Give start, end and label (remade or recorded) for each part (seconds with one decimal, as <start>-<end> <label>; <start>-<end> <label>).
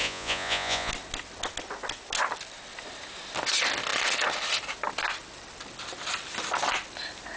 0.0-0.9 remade; 0.9-7.4 recorded